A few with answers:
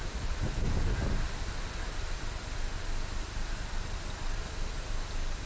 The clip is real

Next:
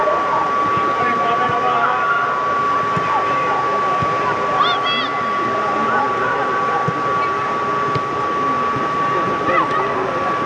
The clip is real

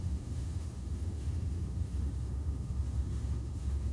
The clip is fake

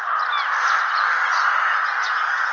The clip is real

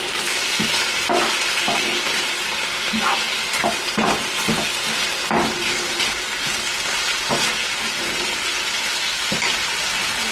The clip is real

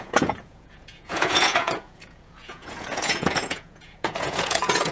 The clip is fake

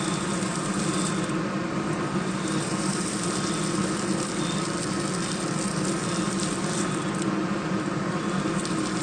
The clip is real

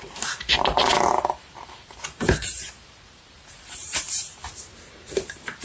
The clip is fake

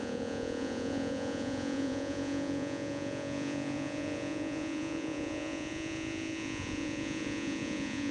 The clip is fake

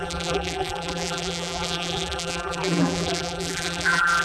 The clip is fake